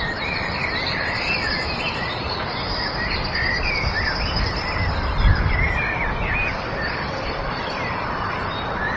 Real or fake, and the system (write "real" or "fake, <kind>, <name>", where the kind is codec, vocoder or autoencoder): fake, vocoder, BigVGAN v2